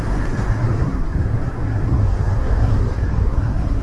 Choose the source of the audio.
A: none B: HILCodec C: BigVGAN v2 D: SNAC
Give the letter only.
D